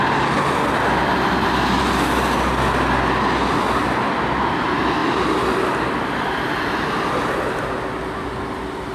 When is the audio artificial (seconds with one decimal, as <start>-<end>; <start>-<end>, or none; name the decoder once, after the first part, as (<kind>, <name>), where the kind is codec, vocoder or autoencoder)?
none